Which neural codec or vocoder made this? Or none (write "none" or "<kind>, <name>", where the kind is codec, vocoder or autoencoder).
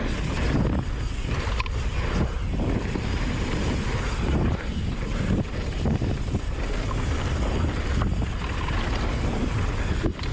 none